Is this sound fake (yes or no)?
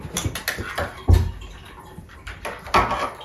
no